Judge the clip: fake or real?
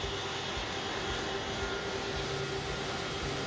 real